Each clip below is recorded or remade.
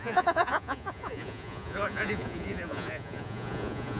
remade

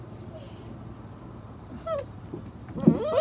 recorded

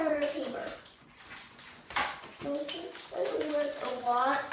remade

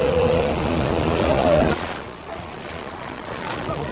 remade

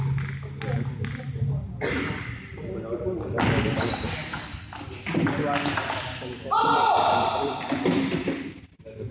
recorded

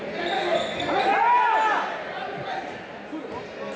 recorded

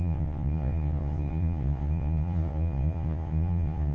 remade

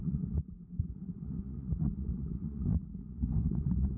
remade